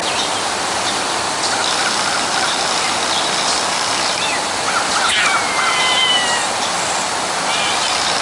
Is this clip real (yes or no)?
yes